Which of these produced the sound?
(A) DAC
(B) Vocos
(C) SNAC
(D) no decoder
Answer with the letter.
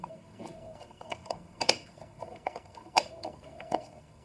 C